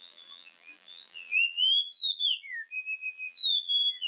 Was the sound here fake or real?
fake